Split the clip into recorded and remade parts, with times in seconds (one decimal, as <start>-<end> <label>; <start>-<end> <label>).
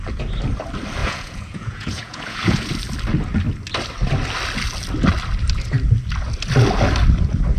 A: 0.0-1.0 recorded; 1.0-2.7 remade; 2.7-7.6 recorded